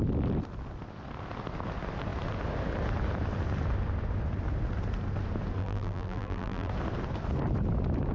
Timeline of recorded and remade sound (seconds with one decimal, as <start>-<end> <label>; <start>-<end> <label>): 0.0-5.6 recorded; 5.6-6.7 remade; 6.7-8.1 recorded